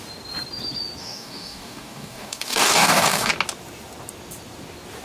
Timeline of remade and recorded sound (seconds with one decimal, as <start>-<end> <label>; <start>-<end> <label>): 0.0-1.0 recorded; 1.0-3.3 remade; 3.3-5.0 recorded